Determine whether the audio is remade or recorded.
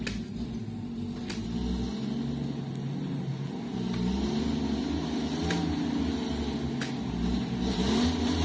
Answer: recorded